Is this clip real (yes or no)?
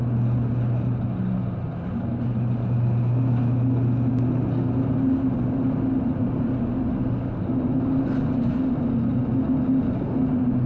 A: yes